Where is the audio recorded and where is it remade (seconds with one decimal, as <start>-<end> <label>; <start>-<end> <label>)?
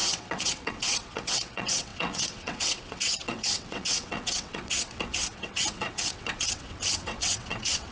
0.0-7.9 remade